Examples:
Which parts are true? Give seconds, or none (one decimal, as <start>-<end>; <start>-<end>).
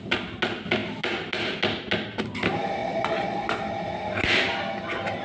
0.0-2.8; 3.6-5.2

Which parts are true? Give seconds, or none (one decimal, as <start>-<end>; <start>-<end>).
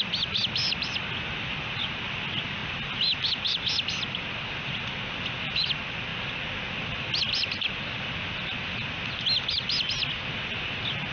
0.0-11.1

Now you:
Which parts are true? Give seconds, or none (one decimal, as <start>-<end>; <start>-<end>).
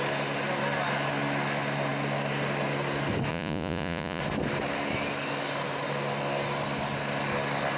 0.0-3.3; 4.2-7.8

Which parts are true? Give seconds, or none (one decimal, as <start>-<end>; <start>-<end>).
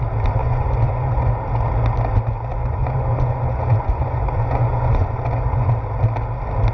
0.0-0.4; 1.3-2.6; 5.7-6.7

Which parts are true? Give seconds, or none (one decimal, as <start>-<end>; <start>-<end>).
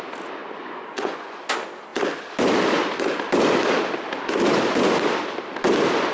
0.0-0.4; 1.4-6.1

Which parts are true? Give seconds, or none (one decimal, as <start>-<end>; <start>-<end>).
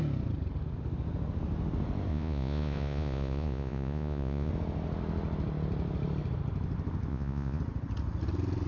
0.0-2.1; 4.5-7.1; 7.6-8.7